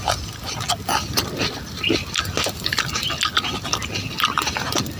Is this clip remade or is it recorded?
recorded